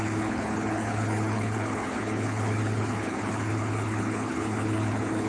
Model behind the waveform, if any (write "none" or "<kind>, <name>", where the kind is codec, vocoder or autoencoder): codec, HILCodec